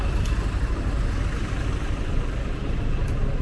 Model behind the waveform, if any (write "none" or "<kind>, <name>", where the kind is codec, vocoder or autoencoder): none